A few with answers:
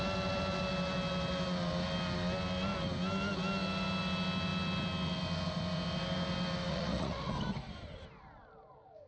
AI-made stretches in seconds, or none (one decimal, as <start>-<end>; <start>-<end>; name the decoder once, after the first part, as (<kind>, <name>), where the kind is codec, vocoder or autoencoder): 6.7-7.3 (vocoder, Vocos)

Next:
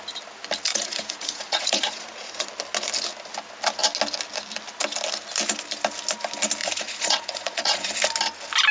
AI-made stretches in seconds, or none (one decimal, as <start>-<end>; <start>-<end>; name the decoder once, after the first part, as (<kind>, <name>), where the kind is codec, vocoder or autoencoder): 0.7-2.5 (vocoder, Vocos); 6.6-7.9

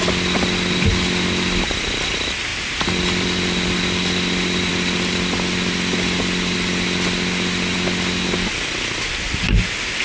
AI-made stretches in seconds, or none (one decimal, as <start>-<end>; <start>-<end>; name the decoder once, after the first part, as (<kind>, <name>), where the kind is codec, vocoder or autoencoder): none

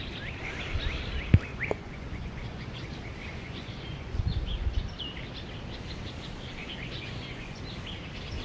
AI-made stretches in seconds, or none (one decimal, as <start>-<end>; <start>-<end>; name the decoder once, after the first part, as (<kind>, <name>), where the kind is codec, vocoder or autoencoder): 1.5-2.9 (vocoder, Vocos); 3.3-4.9; 6.6-7.6

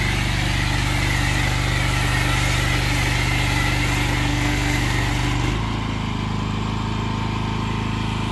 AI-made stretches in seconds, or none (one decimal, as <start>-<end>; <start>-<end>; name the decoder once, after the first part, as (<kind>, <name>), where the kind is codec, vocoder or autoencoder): 4.3-5.1 (codec, SNAC)

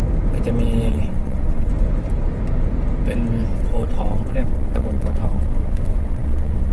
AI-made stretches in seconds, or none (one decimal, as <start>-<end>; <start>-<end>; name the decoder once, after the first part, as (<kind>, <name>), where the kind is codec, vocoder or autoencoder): 0.9-1.7 (vocoder, WaveNeXt); 3.5-6.7